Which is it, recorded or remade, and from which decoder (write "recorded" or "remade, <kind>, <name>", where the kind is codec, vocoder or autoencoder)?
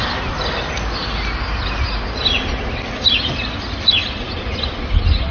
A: recorded